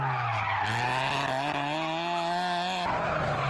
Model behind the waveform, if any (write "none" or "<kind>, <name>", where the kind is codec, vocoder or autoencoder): none